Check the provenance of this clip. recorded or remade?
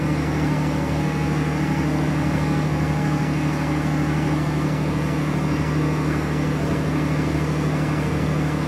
remade